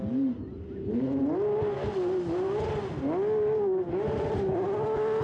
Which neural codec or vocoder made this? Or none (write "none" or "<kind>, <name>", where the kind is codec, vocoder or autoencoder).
none